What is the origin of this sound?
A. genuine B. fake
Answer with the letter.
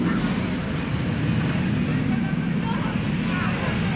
A